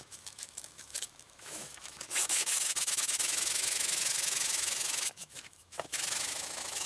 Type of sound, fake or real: fake